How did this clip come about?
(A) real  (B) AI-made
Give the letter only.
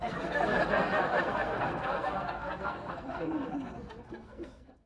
B